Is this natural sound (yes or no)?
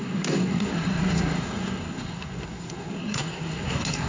no